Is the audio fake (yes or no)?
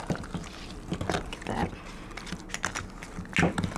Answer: no